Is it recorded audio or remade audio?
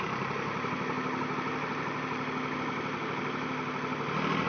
recorded